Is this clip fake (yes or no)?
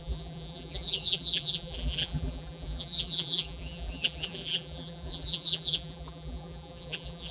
yes